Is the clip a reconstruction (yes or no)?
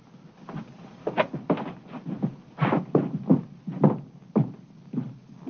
no